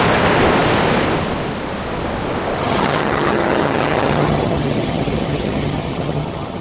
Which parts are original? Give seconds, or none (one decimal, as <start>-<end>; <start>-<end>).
0.0-2.6